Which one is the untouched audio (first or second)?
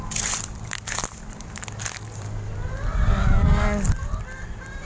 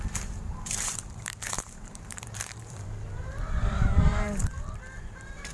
first